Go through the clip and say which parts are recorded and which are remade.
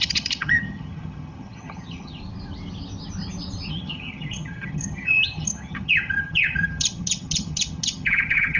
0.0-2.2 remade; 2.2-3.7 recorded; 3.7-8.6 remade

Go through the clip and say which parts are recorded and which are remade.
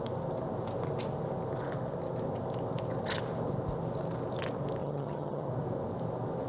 0.0-4.8 recorded; 4.8-5.5 remade; 5.5-6.5 recorded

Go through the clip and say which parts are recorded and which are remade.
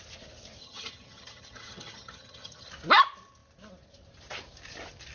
0.0-0.6 recorded; 0.6-2.7 remade; 2.7-5.1 recorded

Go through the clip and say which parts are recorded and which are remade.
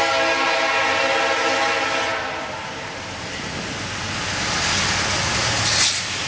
0.0-6.3 recorded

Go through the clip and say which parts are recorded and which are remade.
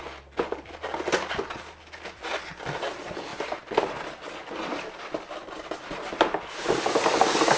0.0-7.6 recorded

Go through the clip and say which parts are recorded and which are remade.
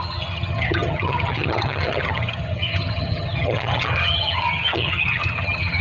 0.0-5.8 remade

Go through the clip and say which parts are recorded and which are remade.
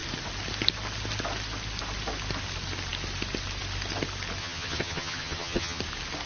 0.0-4.4 recorded; 4.4-5.8 remade; 5.8-6.3 recorded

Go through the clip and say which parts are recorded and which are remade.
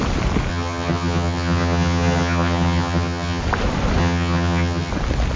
0.0-0.5 recorded; 0.5-3.4 remade; 3.4-4.0 recorded; 4.0-4.9 remade; 4.9-5.4 recorded